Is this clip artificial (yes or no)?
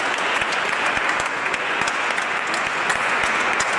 yes